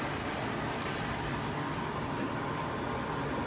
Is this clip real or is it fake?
real